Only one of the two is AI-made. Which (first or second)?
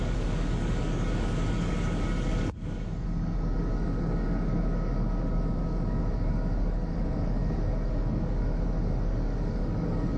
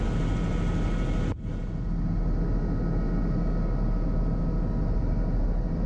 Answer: first